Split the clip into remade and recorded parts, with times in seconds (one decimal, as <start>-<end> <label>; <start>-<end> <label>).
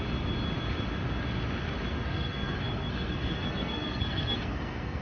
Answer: 0.0-1.9 recorded; 1.9-5.0 remade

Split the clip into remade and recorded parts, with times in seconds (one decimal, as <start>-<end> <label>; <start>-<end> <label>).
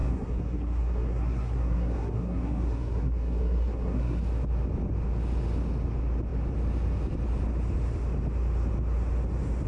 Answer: 0.0-4.2 remade; 4.2-9.7 recorded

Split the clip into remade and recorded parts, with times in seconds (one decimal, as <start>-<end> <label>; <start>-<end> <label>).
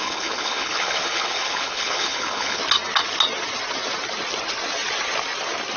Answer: 0.0-2.6 remade; 2.6-5.8 recorded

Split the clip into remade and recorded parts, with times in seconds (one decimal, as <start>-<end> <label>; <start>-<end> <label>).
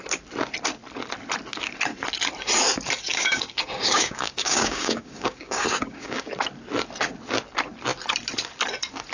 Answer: 0.0-3.1 recorded; 3.1-6.3 remade; 6.3-9.1 recorded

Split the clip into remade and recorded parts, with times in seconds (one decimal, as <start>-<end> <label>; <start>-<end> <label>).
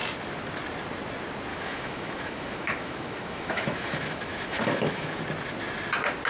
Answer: 0.0-1.5 recorded; 1.5-5.2 remade; 5.2-6.3 recorded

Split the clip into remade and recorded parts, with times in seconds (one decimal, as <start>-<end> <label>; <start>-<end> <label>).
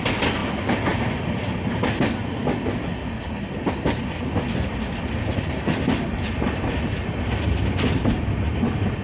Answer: 0.0-9.0 recorded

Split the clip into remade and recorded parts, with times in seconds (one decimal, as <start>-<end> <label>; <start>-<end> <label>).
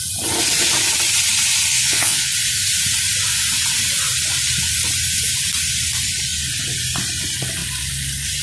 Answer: 0.0-1.7 recorded; 1.7-2.3 remade; 2.3-8.4 recorded